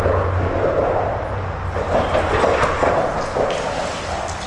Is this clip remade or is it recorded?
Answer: recorded